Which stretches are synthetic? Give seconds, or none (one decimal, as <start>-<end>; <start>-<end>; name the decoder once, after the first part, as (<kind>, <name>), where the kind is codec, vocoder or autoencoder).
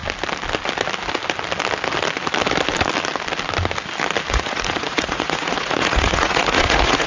4.3-7.1 (vocoder, Vocos)